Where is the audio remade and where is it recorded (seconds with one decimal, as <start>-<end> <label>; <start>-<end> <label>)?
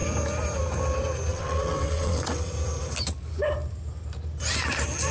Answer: 0.0-1.3 recorded; 1.3-2.5 remade; 2.5-5.1 recorded